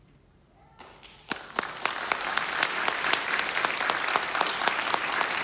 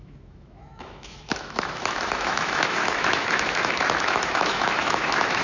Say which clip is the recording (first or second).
first